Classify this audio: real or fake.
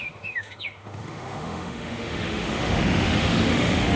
fake